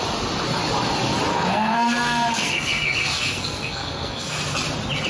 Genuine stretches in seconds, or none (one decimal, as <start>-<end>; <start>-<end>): 0.0-1.3; 4.4-5.1